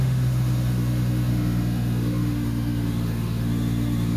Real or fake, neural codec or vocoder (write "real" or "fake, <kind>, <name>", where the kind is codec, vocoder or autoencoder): fake, autoencoder, DAC-VAE